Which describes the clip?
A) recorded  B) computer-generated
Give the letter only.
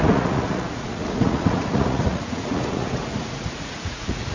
B